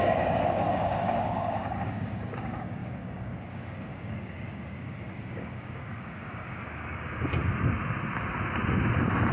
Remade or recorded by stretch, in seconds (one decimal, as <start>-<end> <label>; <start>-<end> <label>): 0.0-7.4 remade; 7.4-9.3 recorded